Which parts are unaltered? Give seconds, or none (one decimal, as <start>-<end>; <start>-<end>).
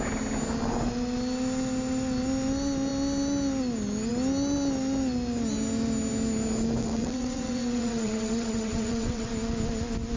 0.0-6.8; 9.3-10.2